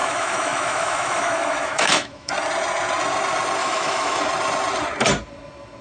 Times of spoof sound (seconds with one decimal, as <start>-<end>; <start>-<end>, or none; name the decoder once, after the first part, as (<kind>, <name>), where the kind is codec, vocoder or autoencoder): 0.0-2.3 (autoencoder, DAC-VAE); 3.6-4.2